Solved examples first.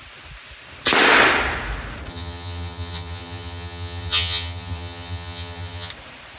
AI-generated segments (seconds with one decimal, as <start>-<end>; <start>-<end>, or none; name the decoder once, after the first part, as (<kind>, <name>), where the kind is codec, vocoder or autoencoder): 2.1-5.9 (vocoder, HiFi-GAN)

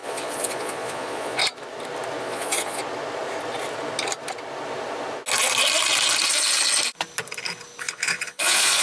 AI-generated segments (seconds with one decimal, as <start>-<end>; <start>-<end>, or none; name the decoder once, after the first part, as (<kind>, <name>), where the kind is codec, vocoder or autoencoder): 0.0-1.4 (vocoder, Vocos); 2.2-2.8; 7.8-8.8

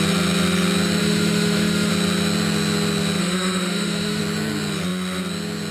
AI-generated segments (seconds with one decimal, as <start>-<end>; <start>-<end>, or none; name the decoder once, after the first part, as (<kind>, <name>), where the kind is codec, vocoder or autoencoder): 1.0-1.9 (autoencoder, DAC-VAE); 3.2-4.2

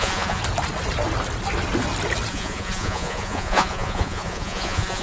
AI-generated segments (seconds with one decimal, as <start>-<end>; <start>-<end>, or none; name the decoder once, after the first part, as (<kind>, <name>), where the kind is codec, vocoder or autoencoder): 0.0-0.4 (vocoder, Vocos); 2.3-5.0

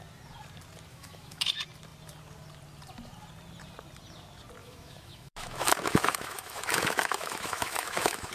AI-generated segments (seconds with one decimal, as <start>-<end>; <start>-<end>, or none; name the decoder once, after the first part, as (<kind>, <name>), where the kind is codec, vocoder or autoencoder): 0.9-1.5 (autoencoder, DAC-VAE); 4.6-8.3

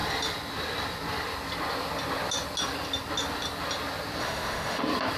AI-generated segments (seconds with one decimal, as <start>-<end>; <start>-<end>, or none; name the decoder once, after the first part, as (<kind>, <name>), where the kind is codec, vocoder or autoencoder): 4.2-4.8 (autoencoder, DAC-VAE)